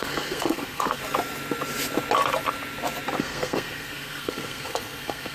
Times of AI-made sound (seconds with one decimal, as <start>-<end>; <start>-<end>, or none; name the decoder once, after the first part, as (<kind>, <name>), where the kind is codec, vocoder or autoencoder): 0.0-1.0 (codec, SNAC); 3.2-5.3